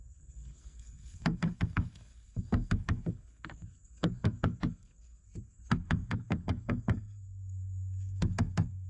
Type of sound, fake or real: fake